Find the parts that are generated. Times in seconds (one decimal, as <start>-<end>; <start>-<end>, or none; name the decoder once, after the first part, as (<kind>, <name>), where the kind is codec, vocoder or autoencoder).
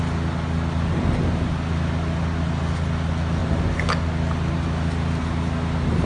none